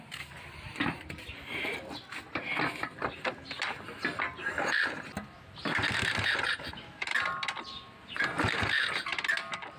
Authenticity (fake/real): real